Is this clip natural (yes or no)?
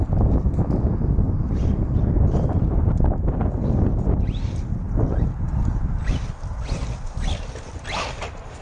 no